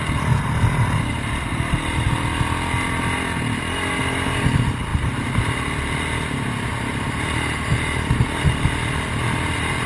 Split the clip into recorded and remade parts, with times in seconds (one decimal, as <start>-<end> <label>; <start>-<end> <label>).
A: 0.0-9.9 recorded

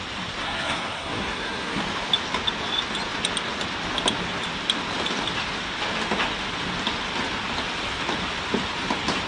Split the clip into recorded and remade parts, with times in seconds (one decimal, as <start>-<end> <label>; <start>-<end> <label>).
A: 0.0-0.4 recorded; 0.4-1.8 remade; 1.8-9.3 recorded